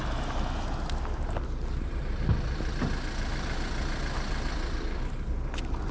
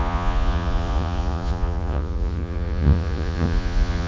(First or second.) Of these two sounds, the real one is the first